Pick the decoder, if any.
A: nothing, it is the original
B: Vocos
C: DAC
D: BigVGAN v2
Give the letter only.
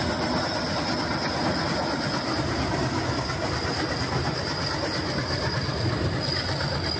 A